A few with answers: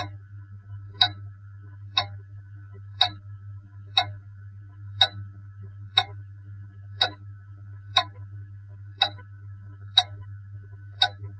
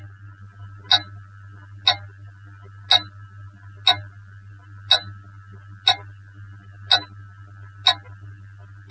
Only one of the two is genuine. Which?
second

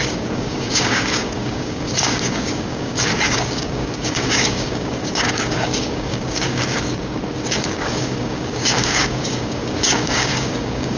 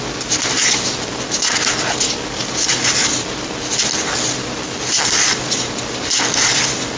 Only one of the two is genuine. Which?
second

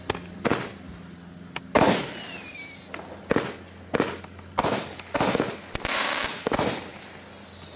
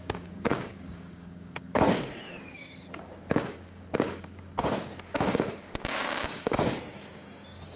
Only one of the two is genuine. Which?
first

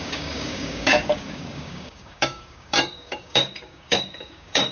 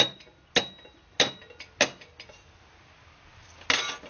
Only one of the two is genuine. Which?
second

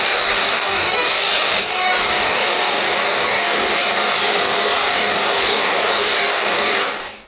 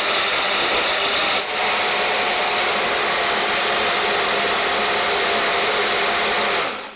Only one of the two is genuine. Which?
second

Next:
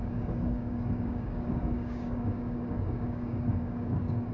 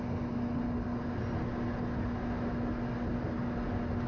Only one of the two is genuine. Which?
second